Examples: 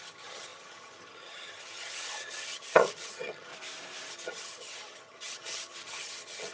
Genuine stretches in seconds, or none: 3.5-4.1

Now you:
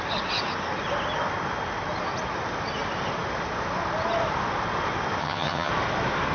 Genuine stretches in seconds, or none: 0.0-5.2; 5.7-6.3

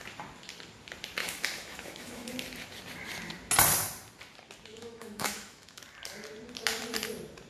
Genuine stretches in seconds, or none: 0.0-1.2; 2.3-4.7; 5.8-7.5

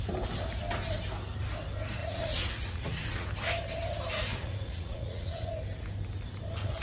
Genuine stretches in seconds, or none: 0.0-2.0; 3.3-4.3; 5.5-6.8

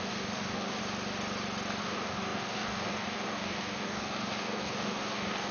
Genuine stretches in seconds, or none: 0.8-1.8

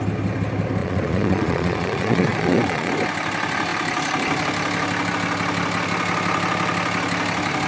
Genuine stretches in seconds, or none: 0.0-0.8; 2.9-7.7

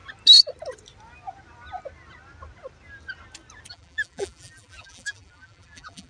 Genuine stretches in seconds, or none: 0.0-3.7

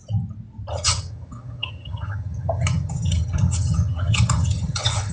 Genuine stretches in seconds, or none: 0.0-0.7